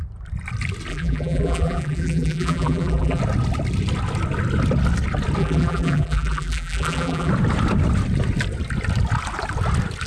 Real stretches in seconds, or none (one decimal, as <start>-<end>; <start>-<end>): 0.0-0.9; 3.2-5.4; 7.3-10.1